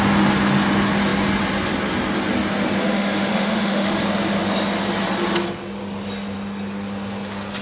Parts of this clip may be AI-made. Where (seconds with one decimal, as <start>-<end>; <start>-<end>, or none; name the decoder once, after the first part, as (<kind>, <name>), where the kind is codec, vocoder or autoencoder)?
2.8-4.0 (autoencoder, DAC-VAE)